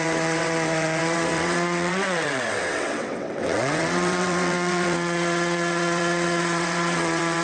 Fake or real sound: fake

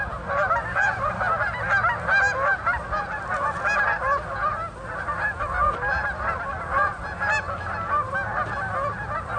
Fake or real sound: real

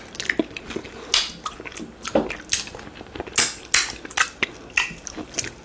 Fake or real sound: real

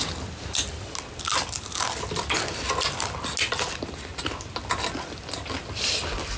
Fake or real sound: real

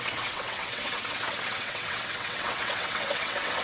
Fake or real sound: fake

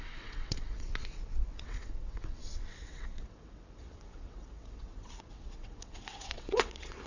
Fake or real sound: fake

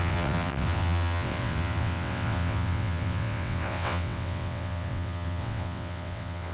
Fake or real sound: fake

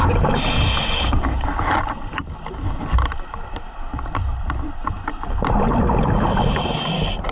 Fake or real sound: real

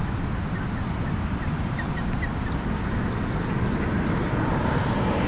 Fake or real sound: real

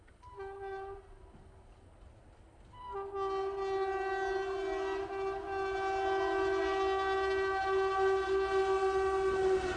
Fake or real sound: real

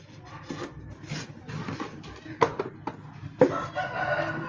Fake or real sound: real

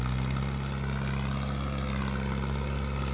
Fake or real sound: real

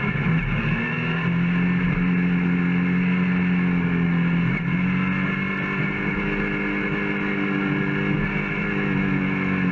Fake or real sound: real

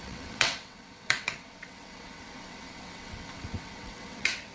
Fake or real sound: fake